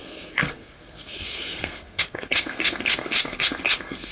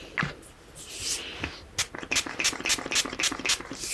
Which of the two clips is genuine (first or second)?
second